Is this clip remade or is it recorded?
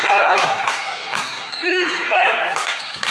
remade